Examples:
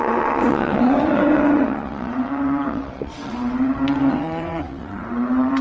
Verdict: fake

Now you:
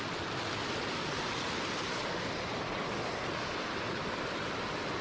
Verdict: real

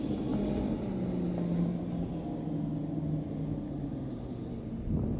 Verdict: real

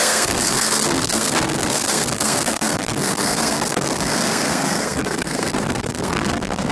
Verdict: fake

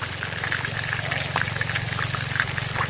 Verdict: real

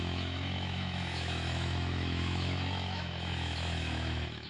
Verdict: fake